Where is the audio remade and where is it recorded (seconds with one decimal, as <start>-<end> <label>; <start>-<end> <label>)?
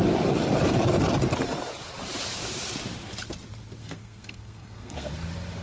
0.0-3.8 recorded; 3.8-5.1 remade; 5.1-5.6 recorded